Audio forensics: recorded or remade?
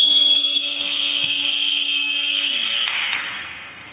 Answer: remade